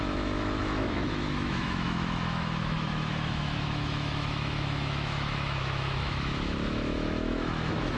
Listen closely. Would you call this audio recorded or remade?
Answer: remade